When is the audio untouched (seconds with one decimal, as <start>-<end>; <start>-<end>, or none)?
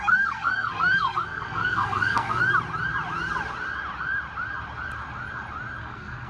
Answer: 2.4-5.8